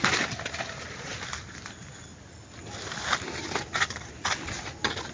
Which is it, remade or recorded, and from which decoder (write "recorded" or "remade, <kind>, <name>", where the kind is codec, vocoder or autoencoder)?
recorded